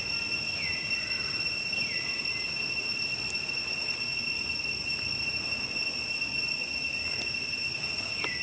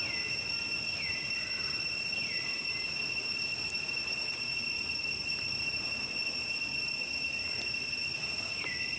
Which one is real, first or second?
first